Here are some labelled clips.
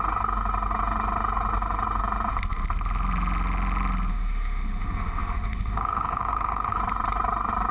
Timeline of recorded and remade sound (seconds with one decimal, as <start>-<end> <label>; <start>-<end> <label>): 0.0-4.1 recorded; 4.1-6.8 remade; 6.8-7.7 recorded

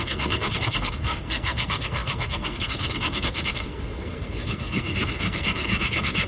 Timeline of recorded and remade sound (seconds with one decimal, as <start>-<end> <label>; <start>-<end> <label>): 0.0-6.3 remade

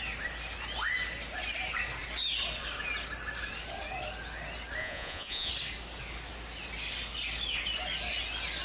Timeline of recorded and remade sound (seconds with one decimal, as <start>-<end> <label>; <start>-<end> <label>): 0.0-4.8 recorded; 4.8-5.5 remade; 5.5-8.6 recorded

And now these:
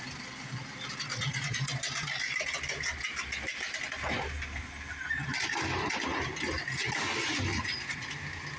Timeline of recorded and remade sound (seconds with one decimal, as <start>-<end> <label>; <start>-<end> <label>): 0.0-1.1 recorded; 1.1-1.7 remade; 1.7-7.5 recorded; 7.5-8.1 remade; 8.1-8.6 recorded